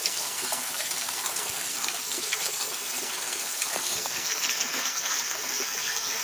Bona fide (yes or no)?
no